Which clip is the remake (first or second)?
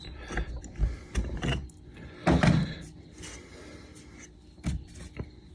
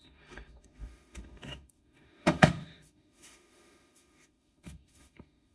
second